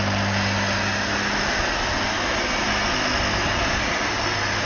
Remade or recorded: recorded